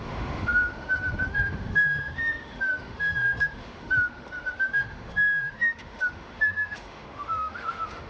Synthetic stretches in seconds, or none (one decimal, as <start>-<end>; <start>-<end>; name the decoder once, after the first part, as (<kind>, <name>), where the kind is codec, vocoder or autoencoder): 0.0-8.1 (autoencoder, DAC-VAE)